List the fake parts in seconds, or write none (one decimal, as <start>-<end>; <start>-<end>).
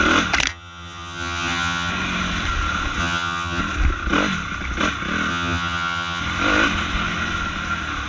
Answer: 0.5-1.9; 3.0-3.6; 5.3-6.2